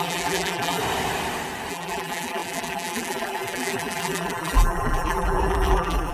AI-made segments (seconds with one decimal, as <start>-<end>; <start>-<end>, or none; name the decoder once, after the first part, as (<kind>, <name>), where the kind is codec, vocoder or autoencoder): 0.0-0.8 (vocoder, BigVGAN v2); 1.7-6.1

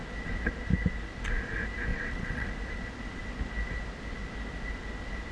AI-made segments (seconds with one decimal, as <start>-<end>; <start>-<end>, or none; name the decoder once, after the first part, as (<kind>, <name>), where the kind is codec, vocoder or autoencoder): 1.9-2.5 (vocoder, WaveNeXt)

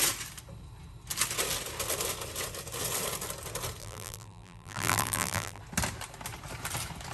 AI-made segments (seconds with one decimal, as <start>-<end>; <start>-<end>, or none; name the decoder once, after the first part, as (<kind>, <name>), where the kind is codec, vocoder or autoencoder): 3.8-5.6 (vocoder, BigVGAN v2)

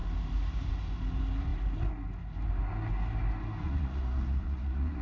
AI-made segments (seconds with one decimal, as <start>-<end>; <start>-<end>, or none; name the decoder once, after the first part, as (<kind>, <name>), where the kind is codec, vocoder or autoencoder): 3.6-5.0 (vocoder, Vocos)

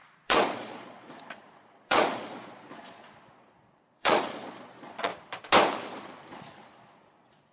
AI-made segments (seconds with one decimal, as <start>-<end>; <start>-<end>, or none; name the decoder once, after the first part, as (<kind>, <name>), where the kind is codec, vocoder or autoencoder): 0.0-5.1 (vocoder, Vocos); 6.4-7.5

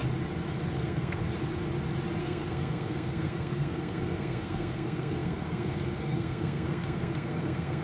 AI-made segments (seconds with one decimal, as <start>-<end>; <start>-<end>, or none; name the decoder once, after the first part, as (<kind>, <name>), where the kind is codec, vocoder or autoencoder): 0.7-1.2 (codec, SNAC); 2.2-7.8